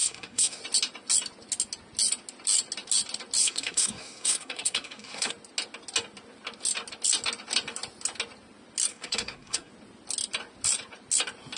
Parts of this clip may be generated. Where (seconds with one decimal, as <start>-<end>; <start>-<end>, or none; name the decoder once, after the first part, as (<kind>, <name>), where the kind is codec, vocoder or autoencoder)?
0.0-0.6 (codec, SNAC); 3.4-5.3; 8.9-9.7